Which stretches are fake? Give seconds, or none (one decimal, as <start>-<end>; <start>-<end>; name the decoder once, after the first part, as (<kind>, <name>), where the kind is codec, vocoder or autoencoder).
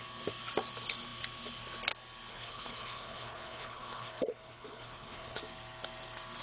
2.3-5.4 (codec, HILCodec)